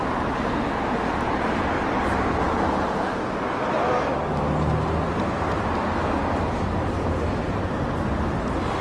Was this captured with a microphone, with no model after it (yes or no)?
yes